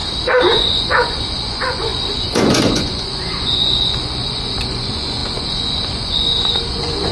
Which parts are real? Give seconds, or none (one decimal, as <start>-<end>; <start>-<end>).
0.0-0.5